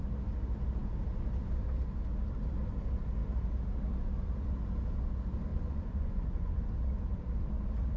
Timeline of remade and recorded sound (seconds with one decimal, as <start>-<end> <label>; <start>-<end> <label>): 0.0-5.5 recorded; 5.5-6.6 remade; 6.6-8.0 recorded